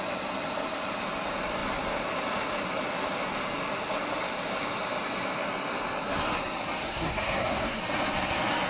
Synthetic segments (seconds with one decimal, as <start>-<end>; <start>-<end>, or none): 6.8-7.8